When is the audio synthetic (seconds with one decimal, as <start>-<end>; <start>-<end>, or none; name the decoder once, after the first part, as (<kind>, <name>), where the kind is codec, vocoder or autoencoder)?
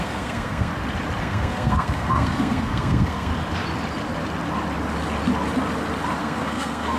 0.0-0.7 (codec, SNAC); 1.2-3.3; 6.2-7.0